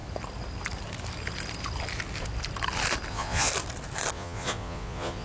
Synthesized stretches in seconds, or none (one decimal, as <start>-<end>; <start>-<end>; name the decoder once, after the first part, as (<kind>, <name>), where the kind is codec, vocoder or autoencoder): 3.1-3.5 (vocoder, Vocos); 4.1-5.2